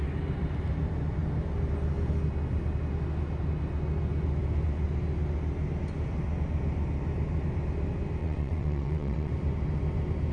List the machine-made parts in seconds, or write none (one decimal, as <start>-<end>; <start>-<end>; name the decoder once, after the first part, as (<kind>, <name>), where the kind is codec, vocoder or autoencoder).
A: 8.2-9.3 (vocoder, WaveNeXt)